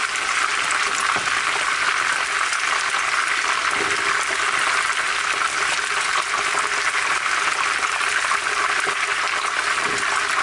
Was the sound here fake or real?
real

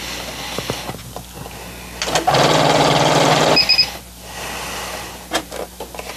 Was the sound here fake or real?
real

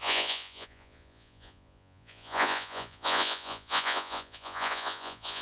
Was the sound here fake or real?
fake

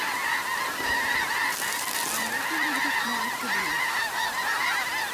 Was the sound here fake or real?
real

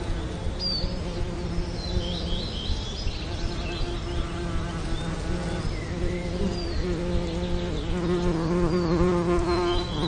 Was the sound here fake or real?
real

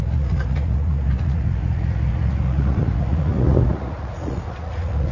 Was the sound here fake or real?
fake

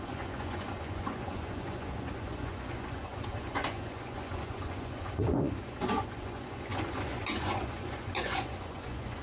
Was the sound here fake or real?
fake